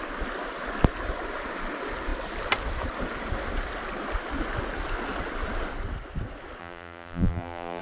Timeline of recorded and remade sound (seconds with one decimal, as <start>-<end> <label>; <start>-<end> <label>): 0.0-6.6 recorded; 6.6-7.8 remade